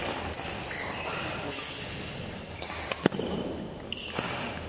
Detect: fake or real real